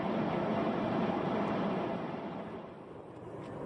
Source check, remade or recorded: recorded